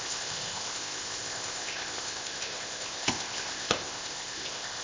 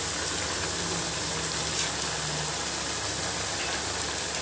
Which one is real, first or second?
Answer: second